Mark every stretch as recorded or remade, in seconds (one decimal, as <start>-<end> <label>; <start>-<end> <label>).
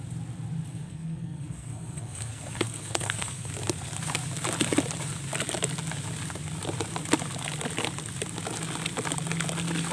0.0-0.7 recorded; 0.7-3.5 remade; 3.5-9.9 recorded